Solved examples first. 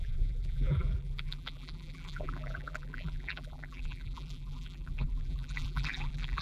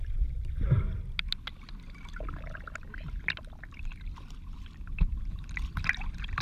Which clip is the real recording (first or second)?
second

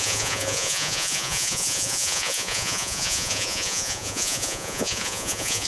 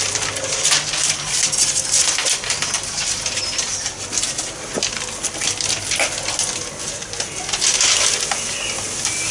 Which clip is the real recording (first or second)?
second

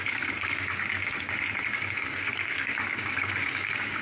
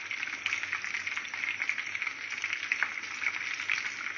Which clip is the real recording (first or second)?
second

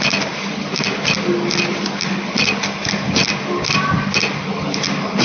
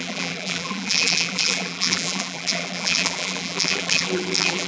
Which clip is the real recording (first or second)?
first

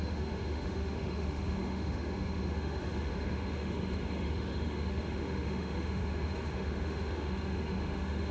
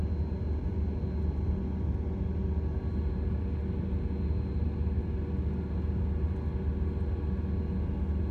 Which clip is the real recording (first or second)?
second